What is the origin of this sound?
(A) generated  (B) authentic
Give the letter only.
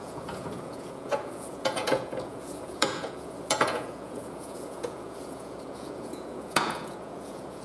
A